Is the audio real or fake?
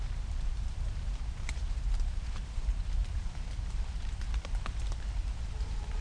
fake